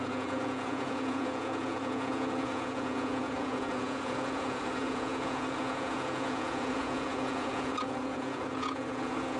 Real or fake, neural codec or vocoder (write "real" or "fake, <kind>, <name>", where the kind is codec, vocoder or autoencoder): fake, vocoder, Vocos